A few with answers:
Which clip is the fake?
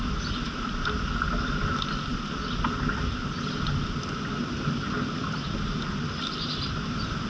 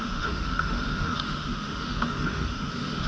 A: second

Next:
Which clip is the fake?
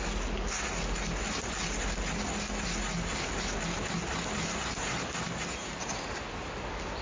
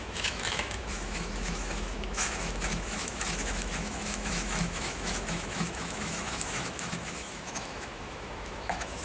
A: second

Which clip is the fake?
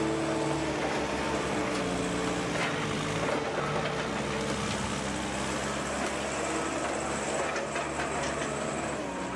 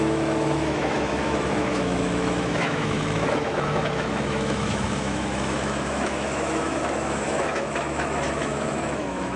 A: second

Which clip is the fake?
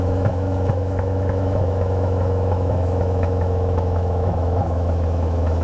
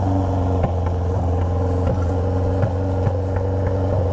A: first